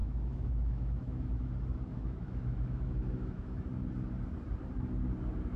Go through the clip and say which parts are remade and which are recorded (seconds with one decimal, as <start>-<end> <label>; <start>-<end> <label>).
0.0-1.5 remade; 1.5-1.9 recorded; 1.9-3.6 remade; 3.6-5.6 recorded